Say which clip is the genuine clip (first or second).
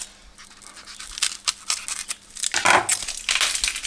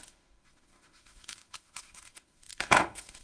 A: first